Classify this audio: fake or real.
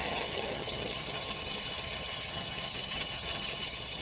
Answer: fake